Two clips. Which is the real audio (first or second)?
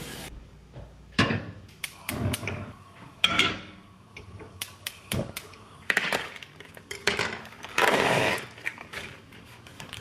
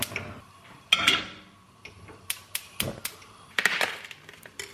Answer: second